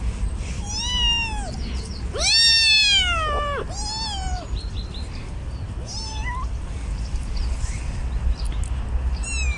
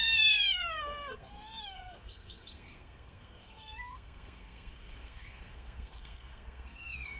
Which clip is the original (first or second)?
first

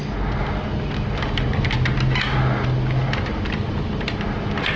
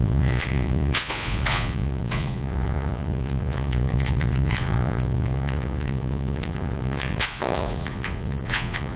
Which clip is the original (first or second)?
first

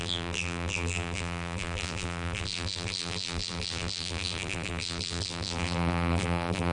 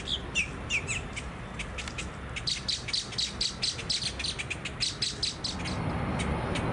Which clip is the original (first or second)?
second